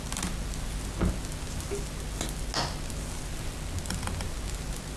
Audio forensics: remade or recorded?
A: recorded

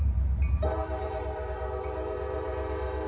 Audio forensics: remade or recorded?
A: remade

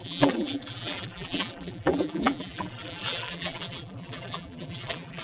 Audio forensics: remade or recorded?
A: remade